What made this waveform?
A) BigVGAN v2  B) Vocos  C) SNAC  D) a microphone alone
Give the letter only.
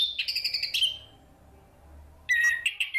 D